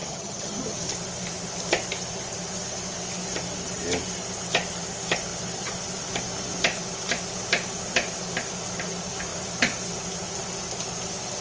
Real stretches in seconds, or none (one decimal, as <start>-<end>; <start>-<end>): 0.8-11.4